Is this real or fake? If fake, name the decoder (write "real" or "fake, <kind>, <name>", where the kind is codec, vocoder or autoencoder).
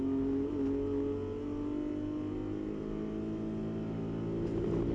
real